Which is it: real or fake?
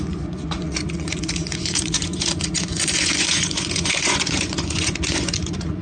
fake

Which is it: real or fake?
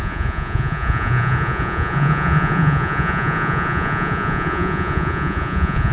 fake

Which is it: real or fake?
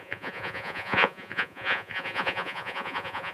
fake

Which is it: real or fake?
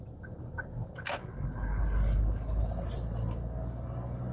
real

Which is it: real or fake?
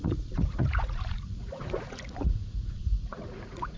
fake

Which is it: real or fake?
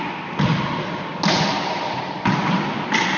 real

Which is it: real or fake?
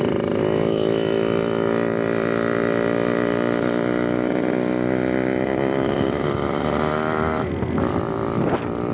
real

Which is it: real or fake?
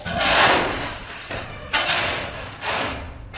fake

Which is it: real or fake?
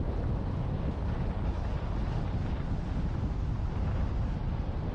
real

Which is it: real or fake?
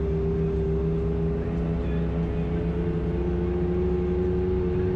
real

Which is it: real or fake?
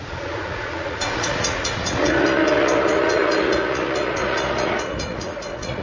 fake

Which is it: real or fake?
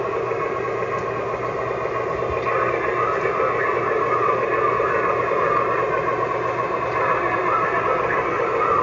real